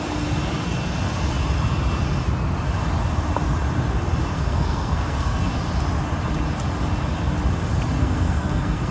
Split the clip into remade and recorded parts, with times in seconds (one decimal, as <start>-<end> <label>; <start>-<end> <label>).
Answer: 0.0-4.3 recorded; 4.3-5.5 remade; 5.5-8.0 recorded; 8.0-8.9 remade